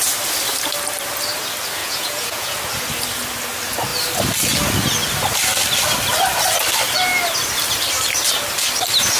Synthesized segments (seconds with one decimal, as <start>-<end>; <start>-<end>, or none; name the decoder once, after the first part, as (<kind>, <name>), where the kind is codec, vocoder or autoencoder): 1.8-2.6 (vocoder, Vocos)